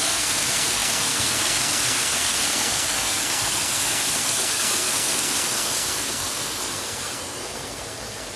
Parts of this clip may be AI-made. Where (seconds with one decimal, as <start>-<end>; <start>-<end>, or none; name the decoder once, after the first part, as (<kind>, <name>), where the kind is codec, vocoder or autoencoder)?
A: 0.0-8.4 (codec, SNAC)